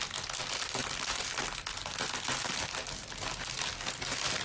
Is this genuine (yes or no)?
yes